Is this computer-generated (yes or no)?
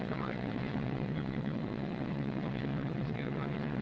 yes